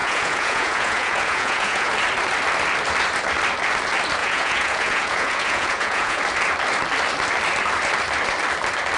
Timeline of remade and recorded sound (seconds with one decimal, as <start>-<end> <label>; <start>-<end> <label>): 0.0-1.9 remade; 1.9-4.2 recorded; 4.2-6.2 remade; 6.2-9.0 recorded